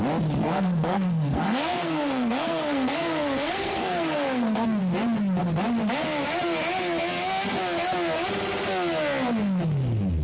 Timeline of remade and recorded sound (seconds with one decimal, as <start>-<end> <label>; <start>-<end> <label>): 0.0-0.4 recorded; 0.4-4.8 remade; 4.8-10.2 recorded